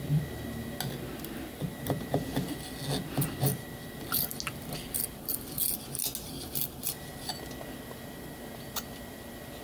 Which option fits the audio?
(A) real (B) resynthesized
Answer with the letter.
A